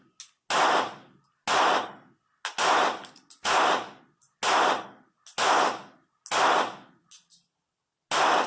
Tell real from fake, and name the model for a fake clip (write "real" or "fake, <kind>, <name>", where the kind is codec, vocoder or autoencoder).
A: real